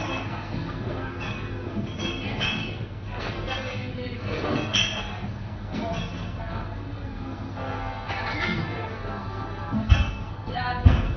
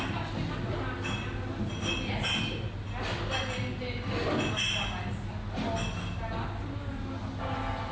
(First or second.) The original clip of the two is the second